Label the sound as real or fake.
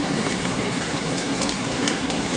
fake